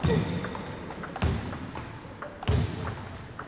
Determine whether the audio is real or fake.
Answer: real